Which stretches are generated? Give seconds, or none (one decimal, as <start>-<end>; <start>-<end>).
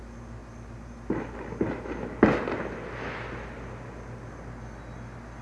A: none